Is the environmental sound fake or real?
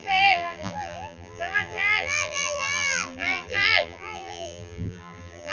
fake